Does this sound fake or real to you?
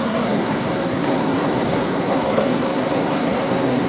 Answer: fake